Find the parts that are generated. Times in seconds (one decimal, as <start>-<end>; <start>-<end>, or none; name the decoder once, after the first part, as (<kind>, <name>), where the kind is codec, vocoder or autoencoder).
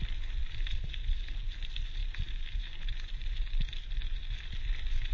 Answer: 2.0-4.2 (vocoder, BigVGAN v2)